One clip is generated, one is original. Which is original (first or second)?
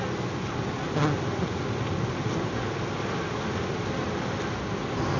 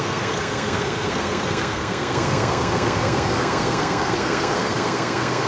first